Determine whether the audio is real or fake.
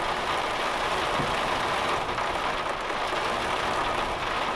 real